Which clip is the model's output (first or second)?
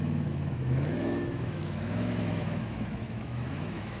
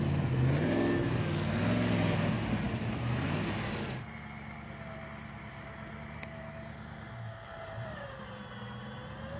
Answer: first